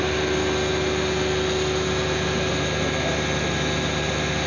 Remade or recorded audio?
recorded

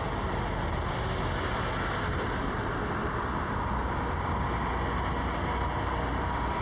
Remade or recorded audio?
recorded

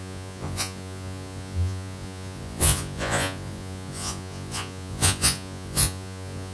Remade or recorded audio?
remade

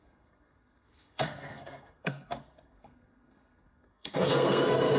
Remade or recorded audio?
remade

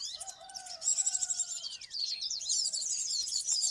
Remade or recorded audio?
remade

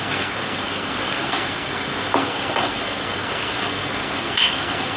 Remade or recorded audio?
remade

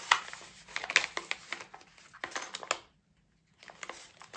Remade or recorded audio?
recorded